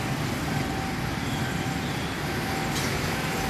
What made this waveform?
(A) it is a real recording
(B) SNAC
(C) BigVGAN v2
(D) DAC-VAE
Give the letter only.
A